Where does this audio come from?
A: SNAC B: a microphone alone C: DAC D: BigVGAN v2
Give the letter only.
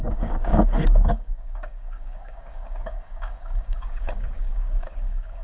C